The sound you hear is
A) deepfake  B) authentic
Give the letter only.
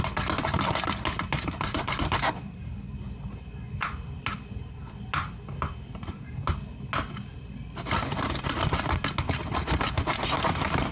B